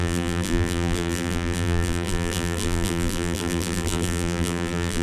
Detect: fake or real fake